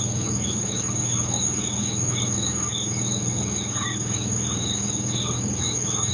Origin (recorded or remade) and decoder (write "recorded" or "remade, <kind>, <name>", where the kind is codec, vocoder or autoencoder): remade, codec, DAC